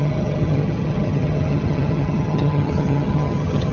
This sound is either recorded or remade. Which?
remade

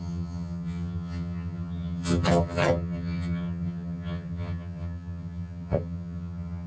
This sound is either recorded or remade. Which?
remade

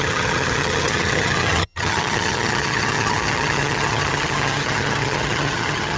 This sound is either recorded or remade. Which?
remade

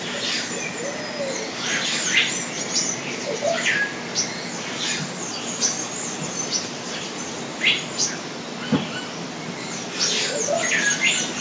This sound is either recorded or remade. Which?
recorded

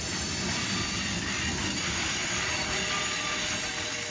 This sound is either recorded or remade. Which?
recorded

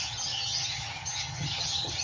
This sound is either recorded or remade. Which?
remade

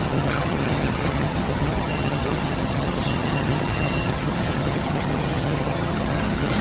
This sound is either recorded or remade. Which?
remade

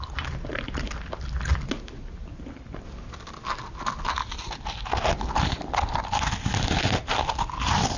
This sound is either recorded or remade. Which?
recorded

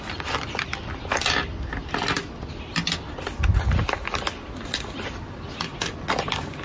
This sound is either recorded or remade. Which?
recorded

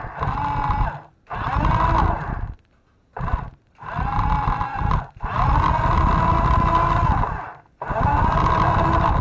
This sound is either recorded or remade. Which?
recorded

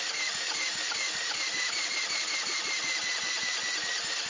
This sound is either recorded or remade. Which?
recorded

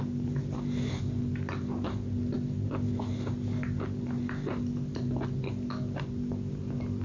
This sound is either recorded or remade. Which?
recorded